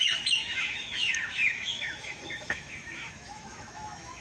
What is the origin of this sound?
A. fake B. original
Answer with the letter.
A